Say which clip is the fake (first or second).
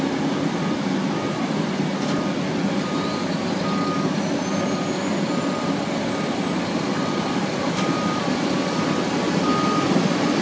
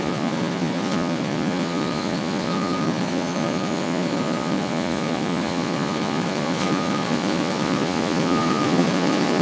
second